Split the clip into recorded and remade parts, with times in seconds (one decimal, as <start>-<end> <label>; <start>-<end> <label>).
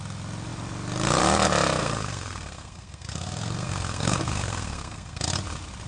0.0-1.8 recorded; 1.8-5.3 remade; 5.3-5.9 recorded